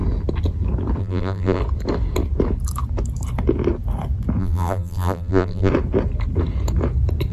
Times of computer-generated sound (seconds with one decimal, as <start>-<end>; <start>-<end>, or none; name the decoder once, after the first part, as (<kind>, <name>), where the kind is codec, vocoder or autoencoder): 1.0-1.6 (vocoder, BigVGAN v2); 4.4-5.7